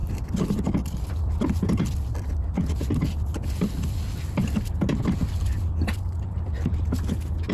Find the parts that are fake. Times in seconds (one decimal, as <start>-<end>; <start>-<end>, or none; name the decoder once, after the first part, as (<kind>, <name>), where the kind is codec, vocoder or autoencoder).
none

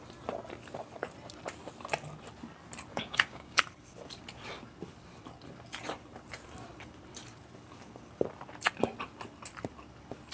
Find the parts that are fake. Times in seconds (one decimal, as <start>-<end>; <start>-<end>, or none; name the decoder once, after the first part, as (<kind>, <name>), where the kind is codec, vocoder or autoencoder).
2.9-3.6 (codec, DAC)

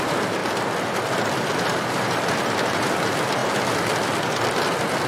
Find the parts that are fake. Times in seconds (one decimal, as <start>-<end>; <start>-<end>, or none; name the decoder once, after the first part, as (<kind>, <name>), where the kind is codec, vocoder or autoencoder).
0.0-0.4 (vocoder, BigVGAN v2); 1.7-3.4

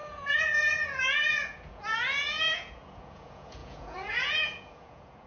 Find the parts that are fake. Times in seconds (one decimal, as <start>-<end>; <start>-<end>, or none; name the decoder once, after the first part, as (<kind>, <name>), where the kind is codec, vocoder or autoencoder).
0.0-5.3 (vocoder, Vocos)

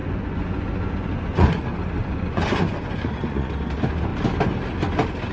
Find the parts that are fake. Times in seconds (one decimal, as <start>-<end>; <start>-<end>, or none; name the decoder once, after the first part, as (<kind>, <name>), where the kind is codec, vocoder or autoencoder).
0.0-1.6 (vocoder, Vocos); 2.0-3.5

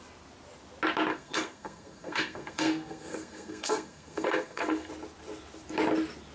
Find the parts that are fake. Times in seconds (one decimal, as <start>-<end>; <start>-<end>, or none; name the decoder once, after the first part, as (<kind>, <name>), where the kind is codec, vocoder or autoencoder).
1.1-4.9 (codec, SNAC)

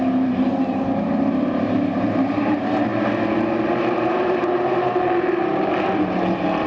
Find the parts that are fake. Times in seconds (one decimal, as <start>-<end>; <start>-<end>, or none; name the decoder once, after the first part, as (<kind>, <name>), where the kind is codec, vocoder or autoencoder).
0.0-6.7 (vocoder, BigVGAN v2)

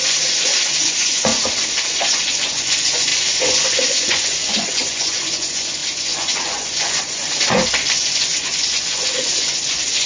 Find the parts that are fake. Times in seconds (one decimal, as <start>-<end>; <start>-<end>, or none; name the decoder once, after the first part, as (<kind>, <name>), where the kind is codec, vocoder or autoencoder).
0.0-1.3 (vocoder, Vocos); 1.9-10.1